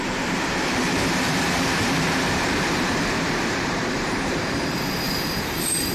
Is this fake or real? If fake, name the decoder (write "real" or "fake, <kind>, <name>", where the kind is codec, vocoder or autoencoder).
fake, vocoder, BigVGAN v2